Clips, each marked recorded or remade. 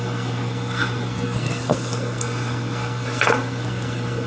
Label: remade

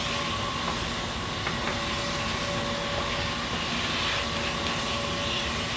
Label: recorded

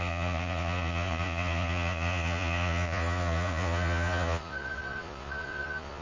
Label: remade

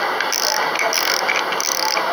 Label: recorded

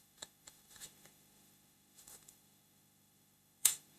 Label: remade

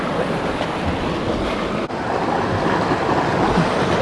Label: recorded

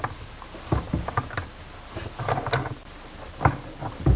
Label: recorded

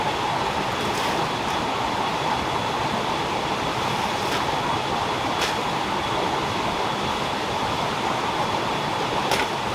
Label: recorded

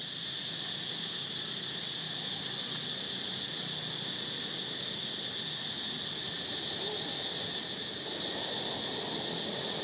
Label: recorded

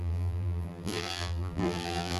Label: remade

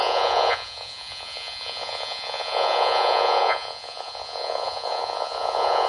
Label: remade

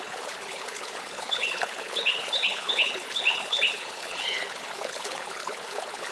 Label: remade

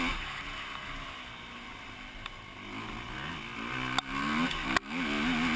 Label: recorded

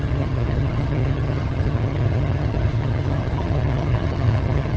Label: remade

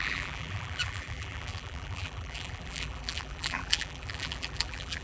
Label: remade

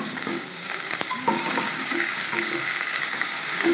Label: remade